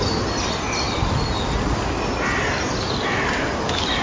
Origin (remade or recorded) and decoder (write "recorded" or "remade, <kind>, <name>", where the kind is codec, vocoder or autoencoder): remade, vocoder, BigVGAN v2